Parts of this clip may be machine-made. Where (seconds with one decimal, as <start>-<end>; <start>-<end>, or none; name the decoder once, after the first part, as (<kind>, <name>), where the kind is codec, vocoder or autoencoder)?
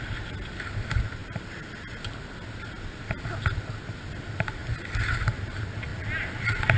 none